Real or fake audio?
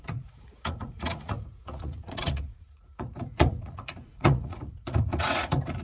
fake